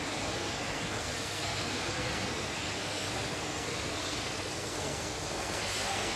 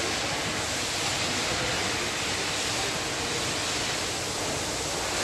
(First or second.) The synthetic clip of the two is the first